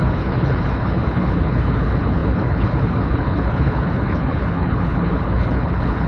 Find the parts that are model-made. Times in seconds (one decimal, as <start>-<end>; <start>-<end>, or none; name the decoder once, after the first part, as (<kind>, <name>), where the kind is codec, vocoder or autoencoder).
0.0-6.1 (codec, HILCodec)